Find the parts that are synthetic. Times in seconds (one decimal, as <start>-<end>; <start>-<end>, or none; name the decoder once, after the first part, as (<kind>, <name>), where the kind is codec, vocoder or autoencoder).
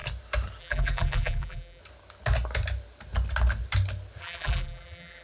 0.6-1.8 (vocoder, BigVGAN v2); 4.2-5.2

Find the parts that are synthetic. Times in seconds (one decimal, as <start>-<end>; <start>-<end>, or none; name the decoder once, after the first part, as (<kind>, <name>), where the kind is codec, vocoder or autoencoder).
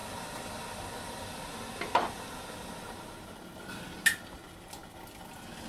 none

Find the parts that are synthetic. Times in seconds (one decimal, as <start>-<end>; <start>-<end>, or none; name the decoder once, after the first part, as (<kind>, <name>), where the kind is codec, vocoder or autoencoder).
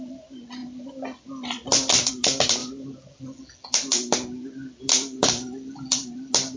none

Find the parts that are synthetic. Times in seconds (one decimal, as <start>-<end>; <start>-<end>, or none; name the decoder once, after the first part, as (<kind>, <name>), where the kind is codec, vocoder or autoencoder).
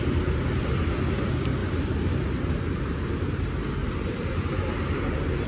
1.6-3.4 (vocoder, BigVGAN v2); 3.8-5.0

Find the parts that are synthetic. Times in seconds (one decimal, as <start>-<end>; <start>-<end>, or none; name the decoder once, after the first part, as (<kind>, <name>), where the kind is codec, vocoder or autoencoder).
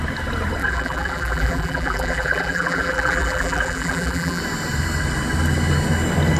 0.6-4.4 (vocoder, BigVGAN v2)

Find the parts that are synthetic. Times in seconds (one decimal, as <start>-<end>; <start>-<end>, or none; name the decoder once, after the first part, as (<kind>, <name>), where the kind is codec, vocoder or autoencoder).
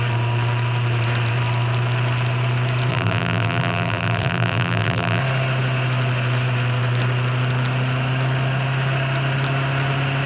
2.9-5.2 (vocoder, BigVGAN v2)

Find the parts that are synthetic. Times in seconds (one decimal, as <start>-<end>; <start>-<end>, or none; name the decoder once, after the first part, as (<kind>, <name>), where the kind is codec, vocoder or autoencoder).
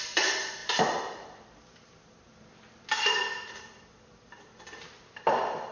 0.0-5.7 (vocoder, BigVGAN v2)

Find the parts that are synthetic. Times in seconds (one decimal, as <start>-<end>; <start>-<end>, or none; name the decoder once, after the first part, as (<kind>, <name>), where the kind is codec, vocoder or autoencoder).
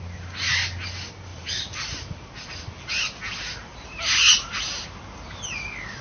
1.3-2.3 (vocoder, BigVGAN v2); 3.7-5.0